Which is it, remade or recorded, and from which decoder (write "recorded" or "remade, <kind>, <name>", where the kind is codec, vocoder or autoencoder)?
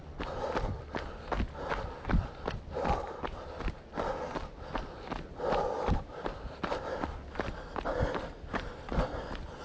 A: recorded